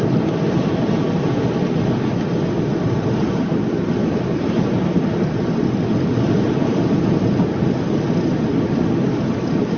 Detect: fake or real real